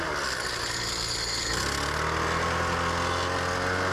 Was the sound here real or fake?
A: real